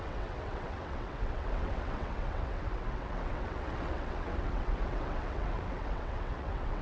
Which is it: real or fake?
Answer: fake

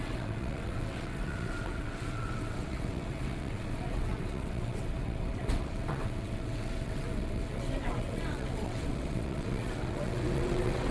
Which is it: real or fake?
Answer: fake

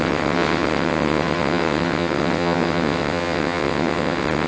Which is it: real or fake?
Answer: fake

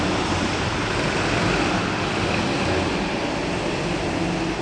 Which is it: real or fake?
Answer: real